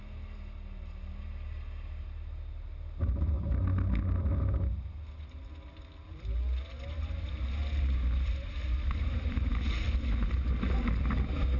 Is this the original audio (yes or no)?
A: yes